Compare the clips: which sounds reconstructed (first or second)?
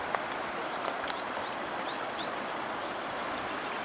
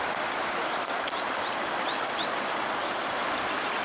first